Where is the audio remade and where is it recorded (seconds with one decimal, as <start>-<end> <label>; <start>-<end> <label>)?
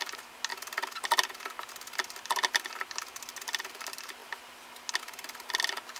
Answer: 0.0-6.0 recorded